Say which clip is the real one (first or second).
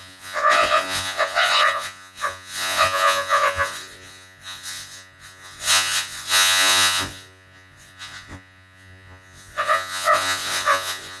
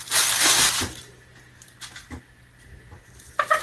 second